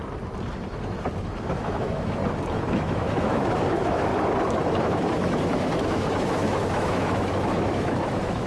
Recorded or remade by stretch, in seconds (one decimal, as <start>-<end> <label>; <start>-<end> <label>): 0.0-1.5 recorded; 1.5-2.2 remade; 2.2-2.7 recorded; 2.7-4.1 remade; 4.1-4.8 recorded; 4.8-8.5 remade